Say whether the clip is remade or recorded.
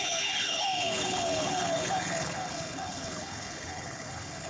remade